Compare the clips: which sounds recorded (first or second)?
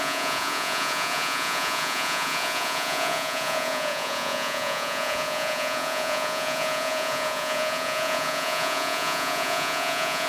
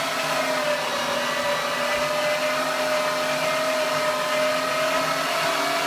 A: second